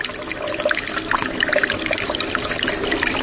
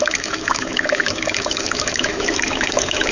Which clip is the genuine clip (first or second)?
first